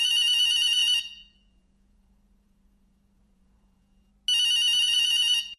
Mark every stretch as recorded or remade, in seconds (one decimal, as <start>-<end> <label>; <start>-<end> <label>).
0.0-4.1 remade; 4.1-4.8 recorded; 4.8-5.6 remade